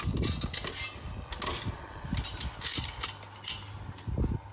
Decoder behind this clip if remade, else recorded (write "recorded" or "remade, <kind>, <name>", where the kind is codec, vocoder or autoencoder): recorded